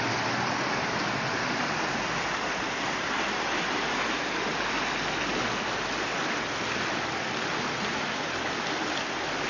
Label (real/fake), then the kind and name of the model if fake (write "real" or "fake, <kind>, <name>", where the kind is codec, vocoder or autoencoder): real